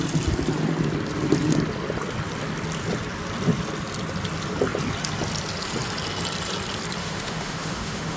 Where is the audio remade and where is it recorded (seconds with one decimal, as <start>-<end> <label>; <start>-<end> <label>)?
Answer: 0.0-7.0 recorded; 7.0-8.2 remade